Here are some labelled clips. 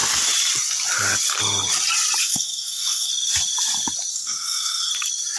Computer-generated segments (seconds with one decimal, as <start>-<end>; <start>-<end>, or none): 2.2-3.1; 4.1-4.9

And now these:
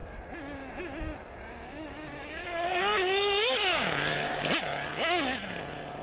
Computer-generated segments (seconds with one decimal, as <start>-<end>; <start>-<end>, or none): none

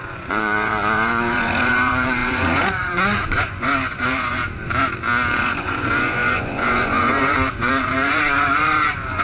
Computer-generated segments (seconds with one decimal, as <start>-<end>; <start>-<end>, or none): 0.0-4.4; 5.4-9.2

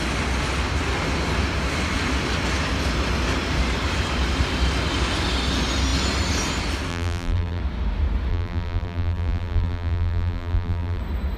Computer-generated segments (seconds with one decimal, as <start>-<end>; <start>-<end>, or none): 6.9-7.6; 8.3-11.0